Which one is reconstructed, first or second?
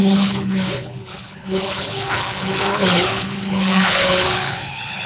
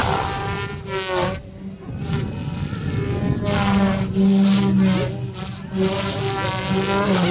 first